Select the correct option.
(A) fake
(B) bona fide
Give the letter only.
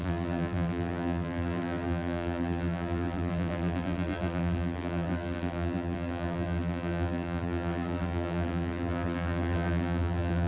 A